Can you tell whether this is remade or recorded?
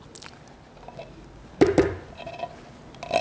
recorded